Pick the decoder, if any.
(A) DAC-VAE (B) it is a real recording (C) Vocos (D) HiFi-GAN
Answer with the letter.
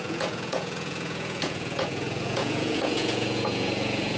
C